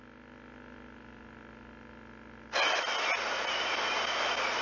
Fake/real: real